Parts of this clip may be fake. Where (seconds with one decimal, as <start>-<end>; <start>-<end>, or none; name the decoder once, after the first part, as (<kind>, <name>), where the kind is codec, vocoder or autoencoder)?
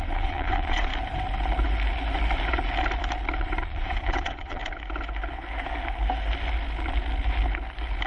0.0-0.9 (vocoder, WaveNeXt); 3.4-4.6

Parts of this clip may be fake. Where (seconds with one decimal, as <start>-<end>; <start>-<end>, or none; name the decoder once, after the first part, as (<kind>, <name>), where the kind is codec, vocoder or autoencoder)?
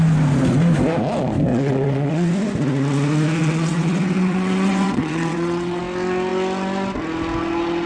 1.5-2.3 (vocoder, WaveNeXt); 3.4-5.8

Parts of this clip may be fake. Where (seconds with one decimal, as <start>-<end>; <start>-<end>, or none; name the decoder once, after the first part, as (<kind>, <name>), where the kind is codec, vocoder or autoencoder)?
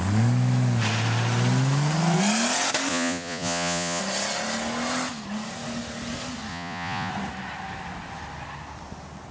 2.9-4.0 (vocoder, Vocos); 6.5-7.1